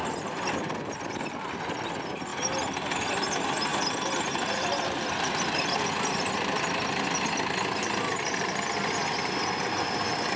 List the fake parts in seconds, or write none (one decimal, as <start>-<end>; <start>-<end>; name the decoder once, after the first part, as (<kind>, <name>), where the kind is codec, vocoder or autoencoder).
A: none